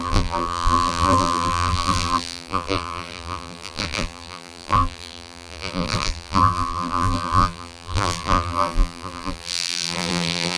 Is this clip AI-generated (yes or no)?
yes